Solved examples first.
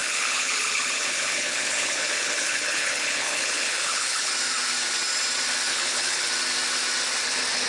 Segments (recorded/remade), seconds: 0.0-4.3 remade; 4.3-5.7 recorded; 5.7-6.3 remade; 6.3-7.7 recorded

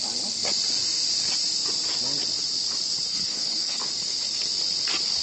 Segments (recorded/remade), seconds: 0.0-3.1 recorded; 3.1-3.8 remade; 3.8-5.2 recorded

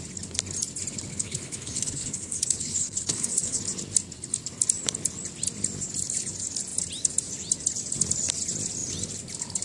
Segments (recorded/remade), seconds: 0.0-1.1 recorded; 1.1-3.6 remade; 3.6-9.6 recorded

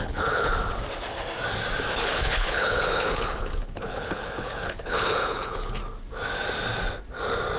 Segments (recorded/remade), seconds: 0.0-0.5 remade; 0.5-1.9 recorded; 1.9-5.8 remade; 5.8-7.6 recorded

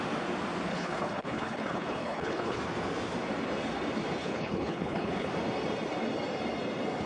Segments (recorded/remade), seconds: 0.0-0.7 recorded; 0.7-2.6 remade; 2.6-4.2 recorded; 4.2-5.3 remade; 5.3-7.1 recorded

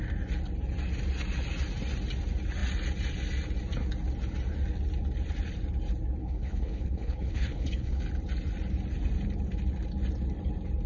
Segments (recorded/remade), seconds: 0.0-6.2 recorded; 6.2-8.0 remade; 8.0-10.9 recorded

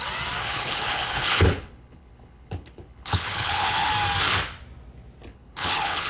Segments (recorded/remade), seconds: 0.0-0.4 recorded; 0.4-3.9 remade; 3.9-5.3 recorded; 5.3-6.1 remade

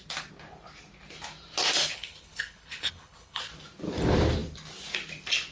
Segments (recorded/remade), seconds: 0.0-1.9 recorded; 1.9-3.5 remade; 3.5-5.5 recorded